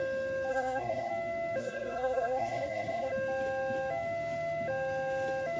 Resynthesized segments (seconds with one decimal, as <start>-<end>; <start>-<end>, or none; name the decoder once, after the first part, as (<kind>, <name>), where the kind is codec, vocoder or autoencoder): 0.5-1.1 (codec, SNAC); 1.6-3.1